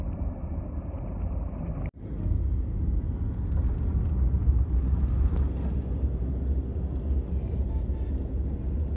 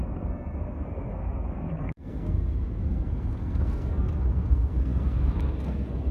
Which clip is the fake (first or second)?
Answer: second